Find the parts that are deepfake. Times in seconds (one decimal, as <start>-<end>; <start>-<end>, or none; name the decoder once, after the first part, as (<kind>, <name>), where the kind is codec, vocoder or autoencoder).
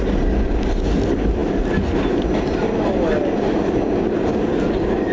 none